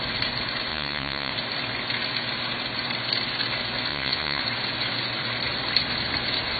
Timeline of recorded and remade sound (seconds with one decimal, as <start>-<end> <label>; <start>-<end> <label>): 0.0-0.7 recorded; 0.7-1.3 remade; 1.3-3.9 recorded; 3.9-4.4 remade; 4.4-6.6 recorded